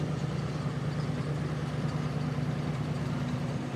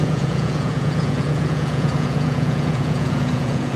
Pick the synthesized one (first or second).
second